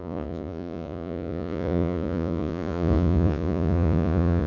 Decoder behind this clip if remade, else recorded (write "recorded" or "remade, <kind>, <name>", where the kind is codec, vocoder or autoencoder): remade, vocoder, Vocos